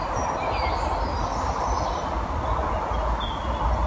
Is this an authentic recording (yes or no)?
yes